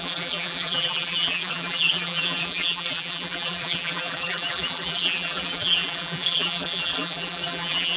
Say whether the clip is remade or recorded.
remade